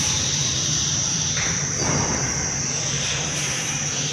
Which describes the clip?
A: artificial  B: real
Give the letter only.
A